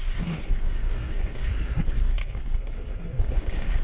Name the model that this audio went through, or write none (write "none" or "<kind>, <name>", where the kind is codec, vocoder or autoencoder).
codec, SNAC